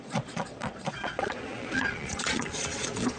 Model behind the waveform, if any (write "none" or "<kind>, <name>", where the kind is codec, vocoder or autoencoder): vocoder, Vocos